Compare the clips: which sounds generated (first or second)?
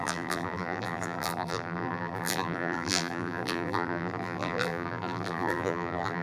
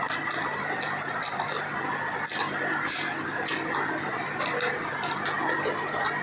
first